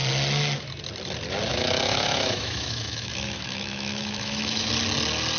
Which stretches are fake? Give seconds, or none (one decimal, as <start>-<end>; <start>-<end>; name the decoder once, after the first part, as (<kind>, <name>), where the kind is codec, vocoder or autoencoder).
1.5-4.7 (autoencoder, DAC-VAE)

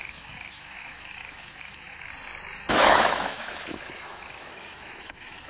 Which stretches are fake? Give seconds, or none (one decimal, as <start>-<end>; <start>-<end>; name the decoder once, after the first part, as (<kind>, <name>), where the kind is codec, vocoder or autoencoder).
0.0-2.1 (autoencoder, DAC-VAE); 2.7-5.5

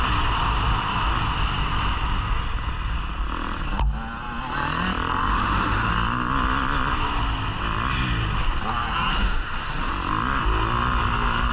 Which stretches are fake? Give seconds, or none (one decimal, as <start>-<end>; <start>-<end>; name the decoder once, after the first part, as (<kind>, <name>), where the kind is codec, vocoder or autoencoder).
5.3-5.9 (autoencoder, DAC-VAE); 9.1-9.9

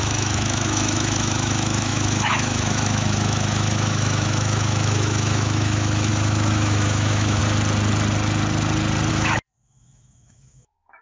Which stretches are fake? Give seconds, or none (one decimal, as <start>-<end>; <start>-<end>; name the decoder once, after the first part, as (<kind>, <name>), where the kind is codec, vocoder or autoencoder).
0.0-7.4 (autoencoder, DAC-VAE); 9.1-11.0

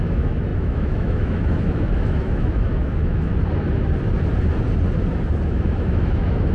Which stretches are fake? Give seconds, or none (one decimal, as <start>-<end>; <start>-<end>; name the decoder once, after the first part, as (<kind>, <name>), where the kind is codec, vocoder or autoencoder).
0.0-3.3 (autoencoder, DAC-VAE); 5.5-6.5

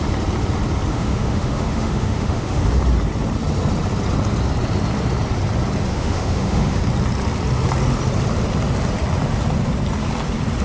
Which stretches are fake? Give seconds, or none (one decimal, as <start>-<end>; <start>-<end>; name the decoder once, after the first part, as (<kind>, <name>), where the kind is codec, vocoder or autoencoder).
0.9-2.6 (autoencoder, DAC-VAE); 5.9-6.8

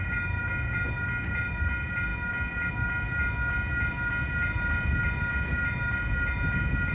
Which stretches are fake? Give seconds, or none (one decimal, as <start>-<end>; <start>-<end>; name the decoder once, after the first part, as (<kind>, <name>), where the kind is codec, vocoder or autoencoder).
none